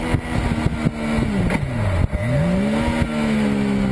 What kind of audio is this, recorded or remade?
recorded